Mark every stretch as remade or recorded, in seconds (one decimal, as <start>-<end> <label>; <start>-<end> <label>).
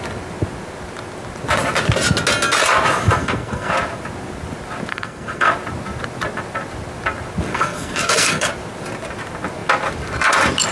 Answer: 0.0-3.2 recorded; 3.2-3.7 remade; 3.7-4.9 recorded; 4.9-5.5 remade; 5.5-7.5 recorded; 7.5-8.5 remade; 8.5-10.7 recorded